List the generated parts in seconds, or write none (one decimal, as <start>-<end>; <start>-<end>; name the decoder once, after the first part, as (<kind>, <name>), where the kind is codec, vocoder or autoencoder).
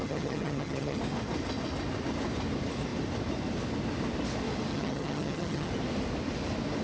0.0-1.0 (vocoder, HiFi-GAN); 4.7-5.7